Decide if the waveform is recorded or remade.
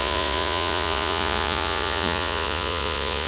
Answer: remade